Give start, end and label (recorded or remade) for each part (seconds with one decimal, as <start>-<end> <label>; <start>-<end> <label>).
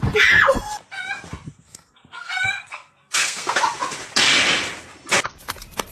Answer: 0.0-1.5 recorded; 1.5-3.6 remade; 3.6-5.9 recorded